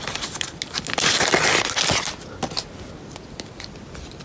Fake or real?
real